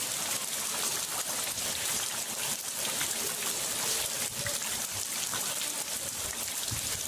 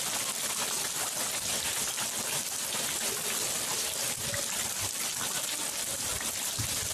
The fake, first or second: first